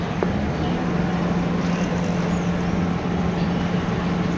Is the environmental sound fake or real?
real